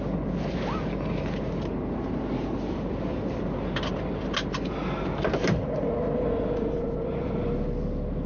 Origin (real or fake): real